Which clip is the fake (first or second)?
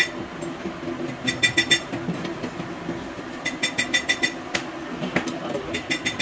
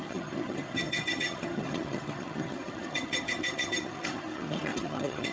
second